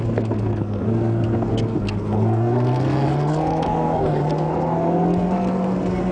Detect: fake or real fake